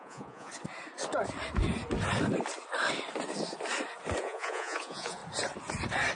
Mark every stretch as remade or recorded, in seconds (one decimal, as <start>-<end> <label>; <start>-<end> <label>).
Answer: 0.0-0.5 remade; 0.5-4.2 recorded; 4.2-5.2 remade; 5.2-6.2 recorded